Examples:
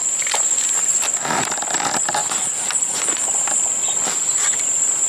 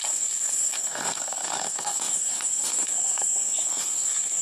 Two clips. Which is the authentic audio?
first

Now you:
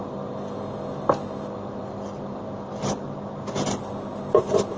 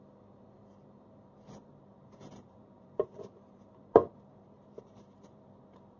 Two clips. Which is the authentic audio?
first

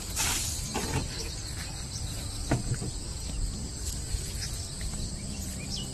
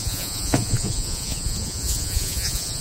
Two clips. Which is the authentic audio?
first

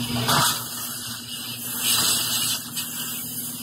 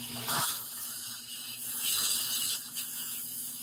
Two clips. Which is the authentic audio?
first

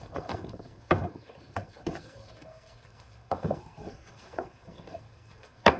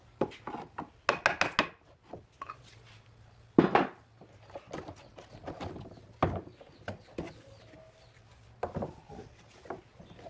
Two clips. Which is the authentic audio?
second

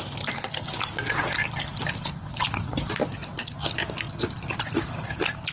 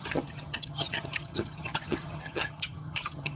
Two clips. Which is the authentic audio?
first